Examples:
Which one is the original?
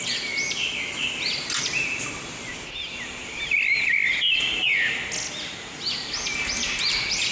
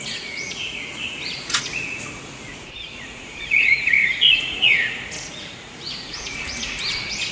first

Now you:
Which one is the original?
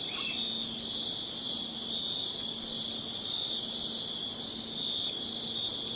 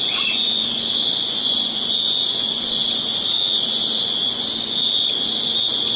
first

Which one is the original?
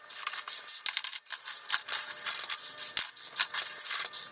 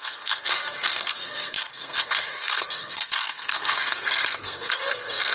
first